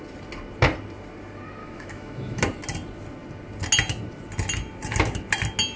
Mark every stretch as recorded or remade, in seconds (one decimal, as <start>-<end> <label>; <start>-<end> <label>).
0.0-1.6 recorded; 1.6-2.4 remade; 2.4-5.8 recorded